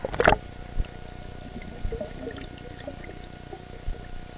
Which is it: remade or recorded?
recorded